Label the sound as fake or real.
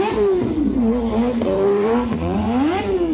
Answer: fake